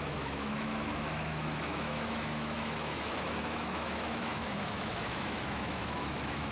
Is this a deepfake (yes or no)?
yes